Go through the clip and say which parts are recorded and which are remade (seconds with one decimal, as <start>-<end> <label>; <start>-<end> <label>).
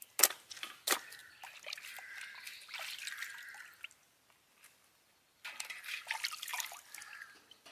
0.0-7.7 recorded